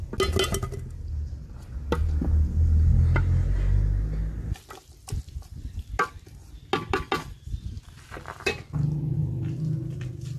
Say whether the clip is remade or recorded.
recorded